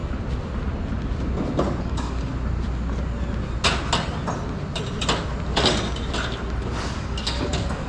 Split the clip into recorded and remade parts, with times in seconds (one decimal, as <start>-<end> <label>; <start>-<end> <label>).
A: 0.0-1.8 recorded; 1.8-2.3 remade; 2.3-7.0 recorded; 7.0-7.9 remade